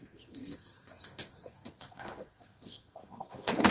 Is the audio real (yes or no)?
no